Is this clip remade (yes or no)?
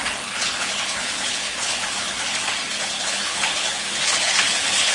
yes